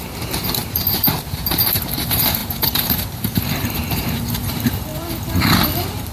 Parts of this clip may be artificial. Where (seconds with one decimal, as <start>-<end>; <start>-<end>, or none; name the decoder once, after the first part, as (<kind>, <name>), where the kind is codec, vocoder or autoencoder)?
0.0-4.9 (vocoder, BigVGAN v2)